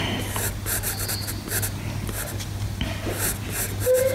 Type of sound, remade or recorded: recorded